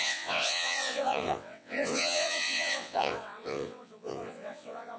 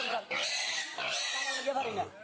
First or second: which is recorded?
second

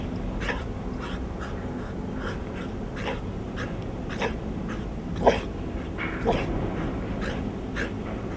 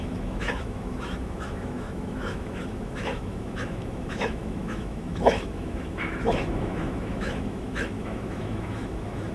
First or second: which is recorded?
first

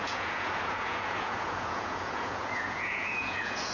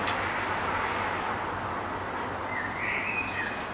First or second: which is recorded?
second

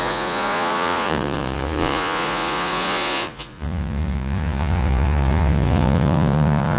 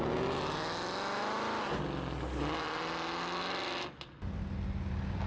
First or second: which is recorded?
second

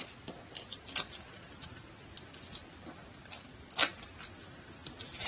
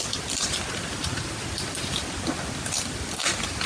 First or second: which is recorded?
first